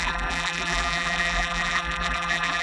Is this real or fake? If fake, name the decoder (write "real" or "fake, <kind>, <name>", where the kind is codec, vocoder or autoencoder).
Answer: fake, vocoder, BigVGAN v2